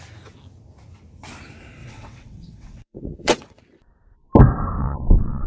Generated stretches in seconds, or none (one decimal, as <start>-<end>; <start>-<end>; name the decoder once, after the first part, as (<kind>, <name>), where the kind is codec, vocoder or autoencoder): 1.8-3.6 (vocoder, WaveNeXt); 4.8-5.5